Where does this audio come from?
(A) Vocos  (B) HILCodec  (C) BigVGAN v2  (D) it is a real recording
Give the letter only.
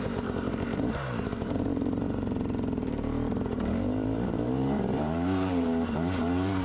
C